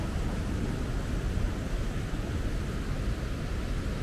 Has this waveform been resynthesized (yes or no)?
no